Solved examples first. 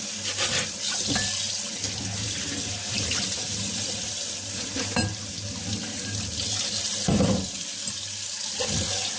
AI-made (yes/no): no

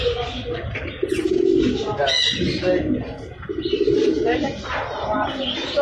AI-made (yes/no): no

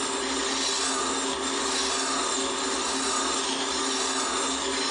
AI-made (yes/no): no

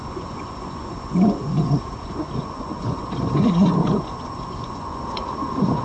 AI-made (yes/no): yes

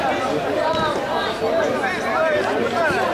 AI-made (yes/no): no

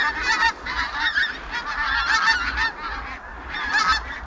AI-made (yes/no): no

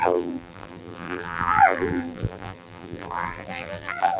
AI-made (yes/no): yes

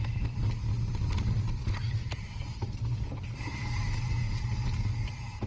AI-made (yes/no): no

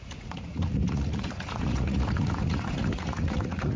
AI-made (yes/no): yes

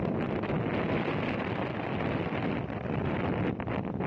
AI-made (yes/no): no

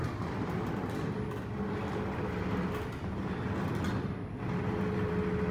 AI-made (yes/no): no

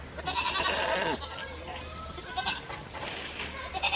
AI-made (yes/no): no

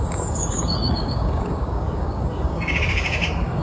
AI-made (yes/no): yes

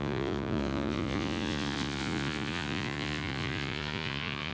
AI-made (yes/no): yes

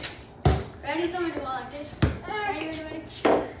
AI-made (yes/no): no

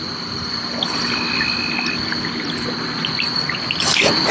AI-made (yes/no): no